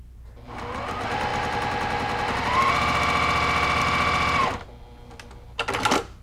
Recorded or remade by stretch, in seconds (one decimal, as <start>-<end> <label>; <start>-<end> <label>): 0.0-6.2 recorded